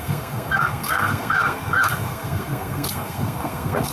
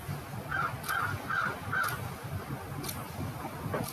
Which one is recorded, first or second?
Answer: second